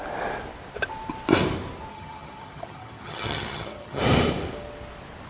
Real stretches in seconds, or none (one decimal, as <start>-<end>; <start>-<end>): 0.0-1.9; 4.0-5.3